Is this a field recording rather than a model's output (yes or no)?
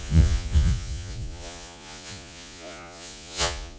no